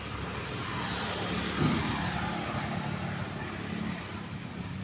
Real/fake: real